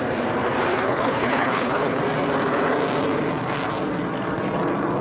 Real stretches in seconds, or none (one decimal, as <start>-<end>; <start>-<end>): 0.0-0.7; 2.0-5.0

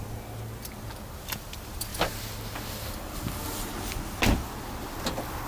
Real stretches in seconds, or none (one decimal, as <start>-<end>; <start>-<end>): 0.0-5.5